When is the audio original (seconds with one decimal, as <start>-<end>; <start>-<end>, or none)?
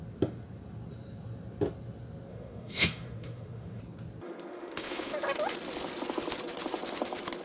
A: 0.0-2.3; 3.8-4.5; 5.1-7.4